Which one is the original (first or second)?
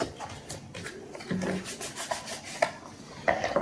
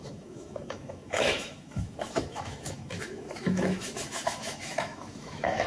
first